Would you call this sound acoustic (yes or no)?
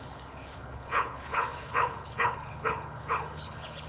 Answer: no